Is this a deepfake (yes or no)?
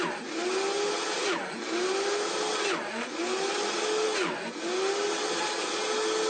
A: no